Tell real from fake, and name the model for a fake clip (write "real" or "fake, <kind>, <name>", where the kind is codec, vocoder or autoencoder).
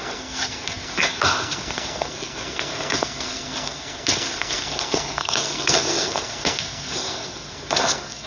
fake, codec, SNAC